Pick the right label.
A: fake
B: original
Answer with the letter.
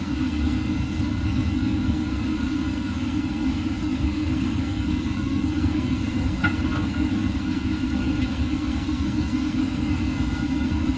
A